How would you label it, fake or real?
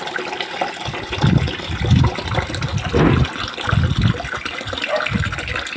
real